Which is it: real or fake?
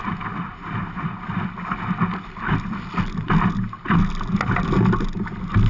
real